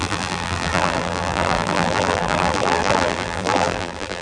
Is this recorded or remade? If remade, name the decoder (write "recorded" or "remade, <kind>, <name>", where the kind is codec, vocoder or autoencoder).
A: remade, vocoder, BigVGAN v2